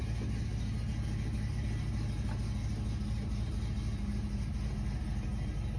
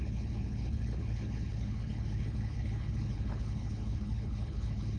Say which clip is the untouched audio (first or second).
first